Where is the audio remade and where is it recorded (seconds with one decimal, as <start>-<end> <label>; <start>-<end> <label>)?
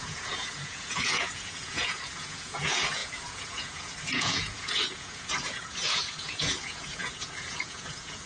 0.0-8.3 remade